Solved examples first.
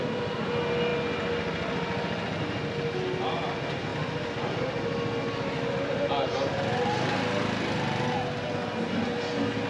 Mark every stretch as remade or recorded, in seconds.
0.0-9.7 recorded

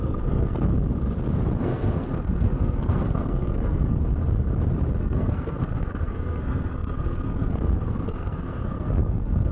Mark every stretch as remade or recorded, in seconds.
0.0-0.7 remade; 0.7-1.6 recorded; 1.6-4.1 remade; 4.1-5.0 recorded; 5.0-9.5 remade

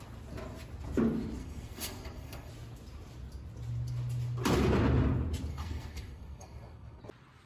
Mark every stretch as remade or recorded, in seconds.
0.0-1.4 recorded; 1.4-2.5 remade; 2.5-5.5 recorded; 5.5-7.0 remade; 7.0-7.5 recorded

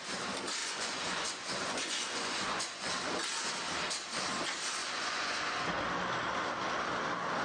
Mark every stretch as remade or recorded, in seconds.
0.0-0.6 recorded; 0.6-2.9 remade; 2.9-4.8 recorded; 4.8-5.7 remade; 5.7-7.4 recorded

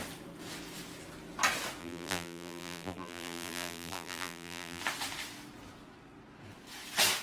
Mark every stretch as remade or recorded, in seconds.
0.0-1.8 recorded; 1.8-4.8 remade; 4.8-7.2 recorded